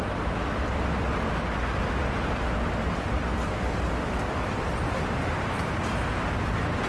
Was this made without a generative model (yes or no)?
yes